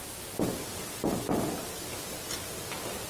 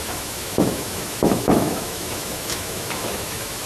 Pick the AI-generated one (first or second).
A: second